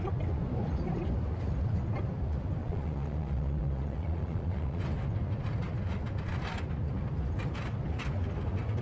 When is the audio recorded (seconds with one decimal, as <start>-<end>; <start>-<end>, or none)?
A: 0.0-2.6; 4.8-8.8